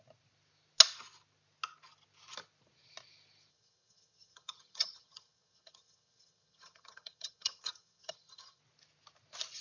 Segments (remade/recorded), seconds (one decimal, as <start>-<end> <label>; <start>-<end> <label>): 0.0-3.5 recorded; 3.5-8.6 remade; 8.6-9.6 recorded